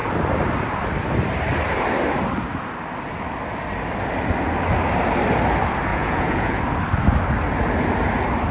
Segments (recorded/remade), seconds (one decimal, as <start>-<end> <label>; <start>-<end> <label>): 0.0-5.9 recorded; 5.9-6.6 remade; 6.6-8.5 recorded

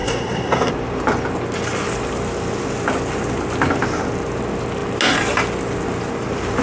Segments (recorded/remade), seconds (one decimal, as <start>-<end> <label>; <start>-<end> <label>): 0.0-0.7 remade; 0.7-6.6 recorded

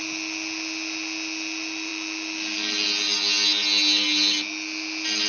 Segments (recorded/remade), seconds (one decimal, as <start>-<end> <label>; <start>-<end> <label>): 0.0-5.3 recorded